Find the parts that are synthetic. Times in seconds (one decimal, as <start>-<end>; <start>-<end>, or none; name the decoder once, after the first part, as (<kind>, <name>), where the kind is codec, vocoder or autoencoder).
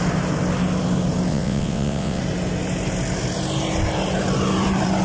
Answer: 1.3-2.2 (vocoder, WaveNeXt)